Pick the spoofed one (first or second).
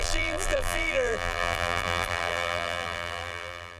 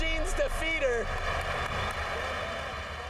first